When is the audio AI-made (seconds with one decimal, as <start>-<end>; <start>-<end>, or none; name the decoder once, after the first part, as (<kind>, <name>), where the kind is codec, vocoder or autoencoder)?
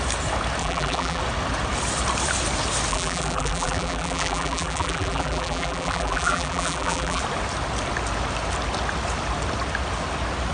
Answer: 0.6-1.2 (vocoder, BigVGAN v2); 2.9-7.2